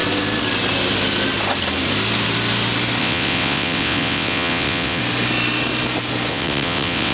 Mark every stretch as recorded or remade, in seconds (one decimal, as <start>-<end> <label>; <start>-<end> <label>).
0.0-3.0 recorded; 3.0-5.0 remade; 5.0-6.3 recorded; 6.3-7.1 remade